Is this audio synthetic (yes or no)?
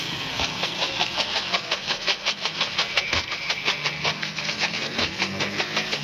yes